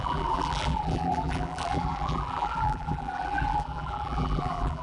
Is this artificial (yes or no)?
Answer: yes